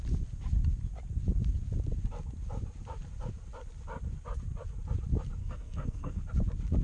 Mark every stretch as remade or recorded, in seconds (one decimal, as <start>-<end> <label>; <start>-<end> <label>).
0.0-5.4 recorded; 5.4-6.2 remade; 6.2-6.8 recorded